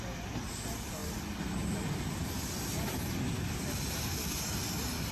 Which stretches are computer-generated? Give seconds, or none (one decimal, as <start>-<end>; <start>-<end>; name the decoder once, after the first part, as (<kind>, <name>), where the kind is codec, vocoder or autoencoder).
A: none